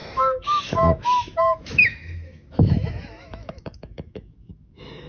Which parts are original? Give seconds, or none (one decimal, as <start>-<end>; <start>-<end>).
none